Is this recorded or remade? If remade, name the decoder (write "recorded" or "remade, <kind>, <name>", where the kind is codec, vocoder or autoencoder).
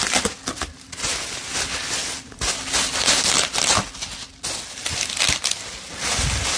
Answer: recorded